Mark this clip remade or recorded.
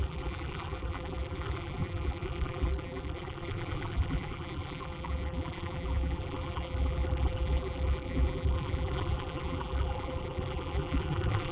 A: remade